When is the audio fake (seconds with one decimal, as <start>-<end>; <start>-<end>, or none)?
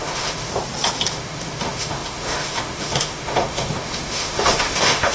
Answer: 0.0-0.5; 1.1-5.1